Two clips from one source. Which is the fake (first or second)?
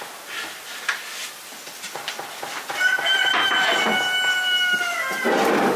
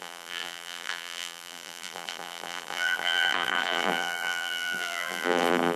second